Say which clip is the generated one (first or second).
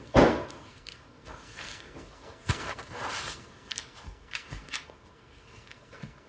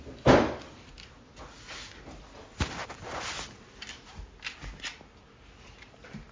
first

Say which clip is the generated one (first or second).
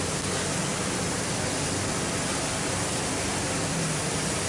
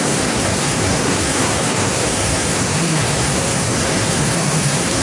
second